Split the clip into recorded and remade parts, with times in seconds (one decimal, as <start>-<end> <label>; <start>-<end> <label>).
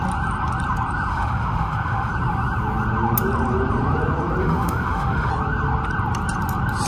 0.0-1.1 recorded; 1.1-2.1 remade; 2.1-4.4 recorded; 4.4-5.3 remade; 5.3-6.9 recorded